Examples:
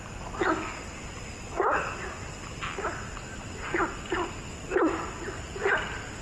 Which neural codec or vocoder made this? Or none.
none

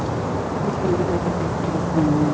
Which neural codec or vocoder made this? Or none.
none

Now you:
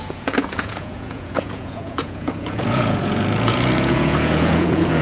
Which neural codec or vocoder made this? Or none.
vocoder, Vocos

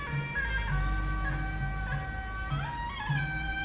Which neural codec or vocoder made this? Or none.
none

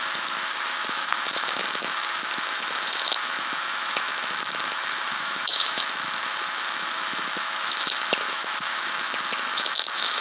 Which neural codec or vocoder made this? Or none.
autoencoder, DAC-VAE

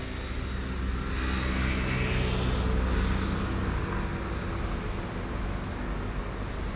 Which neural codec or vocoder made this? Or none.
none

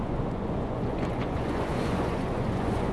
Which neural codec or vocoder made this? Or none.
vocoder, Vocos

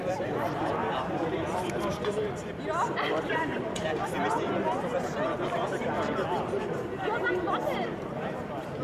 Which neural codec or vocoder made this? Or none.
vocoder, BigVGAN v2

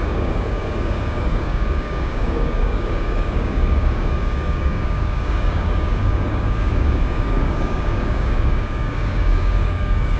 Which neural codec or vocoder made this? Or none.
codec, DAC